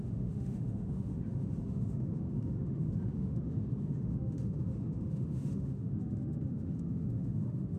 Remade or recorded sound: remade